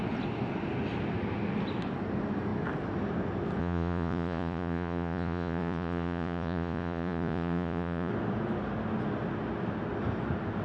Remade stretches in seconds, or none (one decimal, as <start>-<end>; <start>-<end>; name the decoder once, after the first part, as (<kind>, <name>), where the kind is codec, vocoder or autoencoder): 3.6-8.1 (vocoder, Vocos)